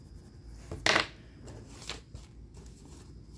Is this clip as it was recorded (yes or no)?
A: yes